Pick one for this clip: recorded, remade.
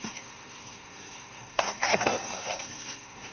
remade